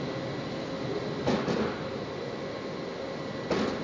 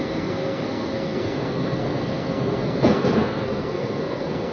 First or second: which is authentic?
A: first